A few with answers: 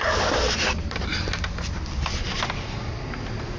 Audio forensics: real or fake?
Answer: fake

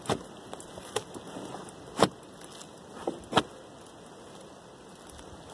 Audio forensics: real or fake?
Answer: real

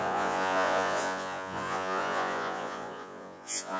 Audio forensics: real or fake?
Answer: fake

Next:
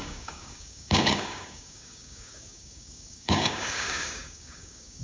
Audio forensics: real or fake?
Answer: fake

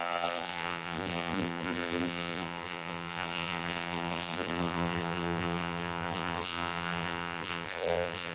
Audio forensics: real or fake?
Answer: fake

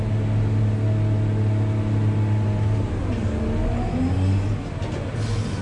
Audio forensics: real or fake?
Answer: real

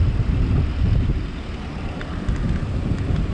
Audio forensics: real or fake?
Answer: real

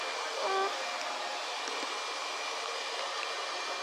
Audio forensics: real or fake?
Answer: real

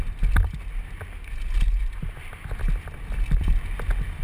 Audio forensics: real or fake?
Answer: real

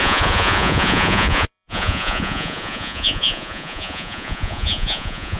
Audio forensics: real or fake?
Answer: fake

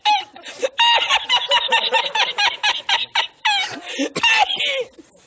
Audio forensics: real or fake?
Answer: real